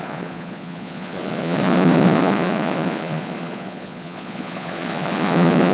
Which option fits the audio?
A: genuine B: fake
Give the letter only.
B